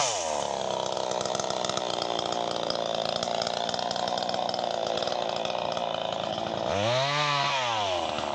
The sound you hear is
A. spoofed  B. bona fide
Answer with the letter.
B